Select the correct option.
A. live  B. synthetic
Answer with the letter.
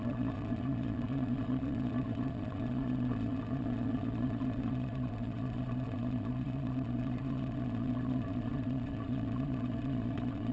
B